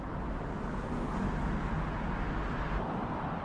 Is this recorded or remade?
recorded